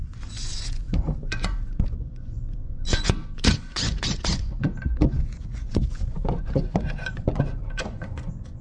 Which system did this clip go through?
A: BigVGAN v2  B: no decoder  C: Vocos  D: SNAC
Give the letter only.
C